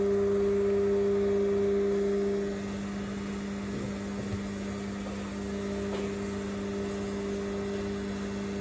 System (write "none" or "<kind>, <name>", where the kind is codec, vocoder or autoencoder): none